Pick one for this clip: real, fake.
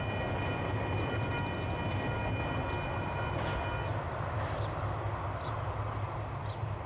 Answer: real